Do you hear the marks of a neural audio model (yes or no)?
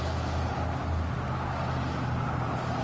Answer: no